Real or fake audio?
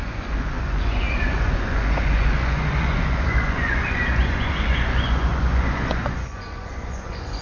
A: fake